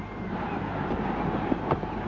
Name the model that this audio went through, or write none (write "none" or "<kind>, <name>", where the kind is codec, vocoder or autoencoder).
none